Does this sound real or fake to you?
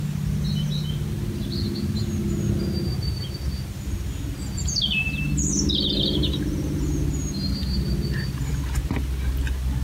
real